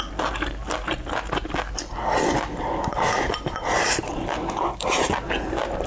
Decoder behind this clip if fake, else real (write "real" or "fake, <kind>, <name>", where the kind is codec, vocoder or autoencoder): real